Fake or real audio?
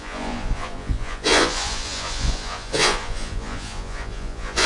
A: fake